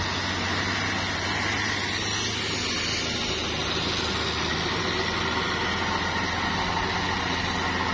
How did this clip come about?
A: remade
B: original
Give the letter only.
B